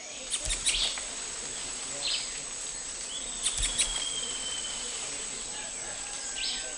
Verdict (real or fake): real